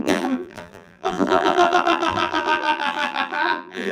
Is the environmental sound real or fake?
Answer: fake